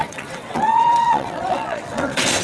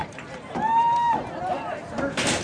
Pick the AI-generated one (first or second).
first